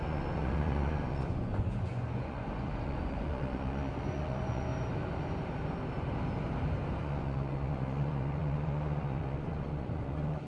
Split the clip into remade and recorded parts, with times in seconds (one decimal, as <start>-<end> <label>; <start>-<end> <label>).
0.0-4.7 remade; 4.7-7.0 recorded; 7.0-10.5 remade